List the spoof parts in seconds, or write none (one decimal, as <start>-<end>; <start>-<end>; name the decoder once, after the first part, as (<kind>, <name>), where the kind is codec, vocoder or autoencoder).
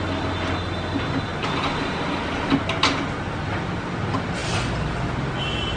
none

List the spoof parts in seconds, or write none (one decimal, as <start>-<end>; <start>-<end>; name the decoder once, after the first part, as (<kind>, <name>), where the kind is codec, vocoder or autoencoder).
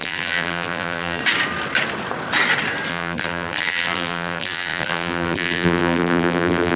0.0-1.2 (vocoder, BigVGAN v2); 2.9-6.8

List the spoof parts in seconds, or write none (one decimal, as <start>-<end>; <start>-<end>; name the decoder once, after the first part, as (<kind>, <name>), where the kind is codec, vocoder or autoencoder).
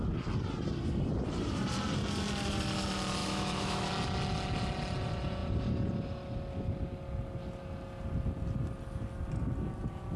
3.2-3.9 (autoencoder, DAC-VAE)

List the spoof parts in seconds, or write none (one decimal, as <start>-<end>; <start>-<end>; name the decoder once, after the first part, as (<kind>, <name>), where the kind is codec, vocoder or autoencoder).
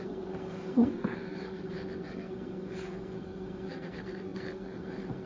0.0-5.3 (codec, SNAC)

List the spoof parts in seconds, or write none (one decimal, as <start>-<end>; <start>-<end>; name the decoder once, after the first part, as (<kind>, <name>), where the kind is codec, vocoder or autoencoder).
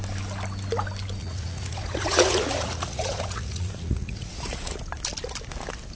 1.2-4.8 (vocoder, Vocos)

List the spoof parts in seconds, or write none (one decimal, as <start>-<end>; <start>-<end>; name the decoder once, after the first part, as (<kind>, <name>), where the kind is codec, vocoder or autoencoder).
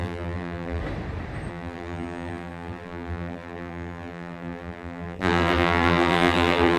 0.0-0.8 (vocoder, BigVGAN v2); 1.5-6.8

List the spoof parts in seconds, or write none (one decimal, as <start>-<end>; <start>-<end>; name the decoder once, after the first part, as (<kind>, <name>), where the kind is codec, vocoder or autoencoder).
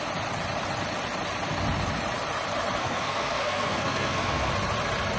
2.8-4.5 (codec, SNAC)